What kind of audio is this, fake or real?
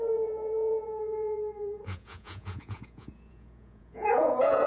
fake